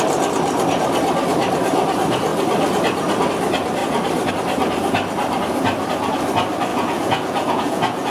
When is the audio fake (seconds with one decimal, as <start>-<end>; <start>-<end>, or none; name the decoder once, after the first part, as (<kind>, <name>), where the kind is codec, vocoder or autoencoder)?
6.7-8.1 (vocoder, Vocos)